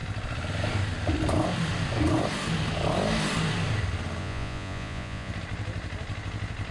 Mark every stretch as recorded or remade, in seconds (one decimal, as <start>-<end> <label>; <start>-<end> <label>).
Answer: 0.0-4.2 recorded; 4.2-5.3 remade; 5.3-6.7 recorded

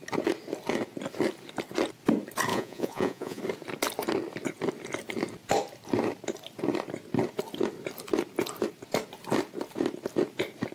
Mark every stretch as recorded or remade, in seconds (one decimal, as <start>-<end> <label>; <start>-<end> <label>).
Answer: 0.0-2.5 recorded; 2.5-3.4 remade; 3.4-10.7 recorded

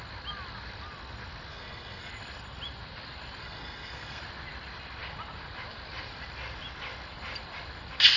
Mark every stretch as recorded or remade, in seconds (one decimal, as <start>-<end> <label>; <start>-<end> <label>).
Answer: 0.0-1.5 recorded; 1.5-2.1 remade; 2.1-3.4 recorded; 3.4-4.2 remade; 4.2-8.2 recorded

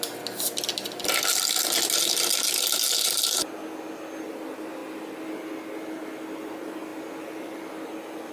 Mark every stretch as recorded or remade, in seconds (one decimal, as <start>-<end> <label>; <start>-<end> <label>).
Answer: 0.0-8.3 recorded

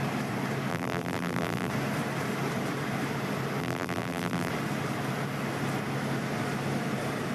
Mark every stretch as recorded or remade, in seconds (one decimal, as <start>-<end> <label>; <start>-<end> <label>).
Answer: 0.0-0.7 recorded; 0.7-1.7 remade; 1.7-3.6 recorded; 3.6-4.5 remade; 4.5-7.3 recorded

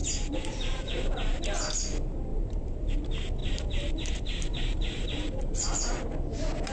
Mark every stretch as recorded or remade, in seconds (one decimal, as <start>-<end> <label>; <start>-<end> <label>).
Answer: 0.0-1.4 remade; 1.4-2.3 recorded; 2.3-3.0 remade; 3.0-3.4 recorded; 3.4-5.5 remade; 5.5-6.7 recorded

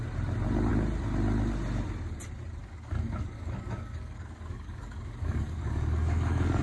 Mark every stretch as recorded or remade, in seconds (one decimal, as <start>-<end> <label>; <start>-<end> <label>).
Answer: 0.0-2.6 recorded; 2.6-6.6 remade